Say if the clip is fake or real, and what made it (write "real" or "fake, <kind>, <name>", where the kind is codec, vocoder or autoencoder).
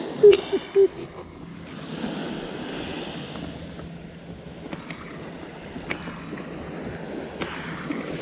real